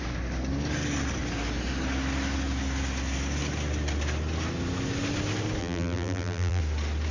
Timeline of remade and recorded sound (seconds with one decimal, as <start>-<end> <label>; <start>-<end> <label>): 0.0-5.6 recorded; 5.6-6.6 remade; 6.6-7.1 recorded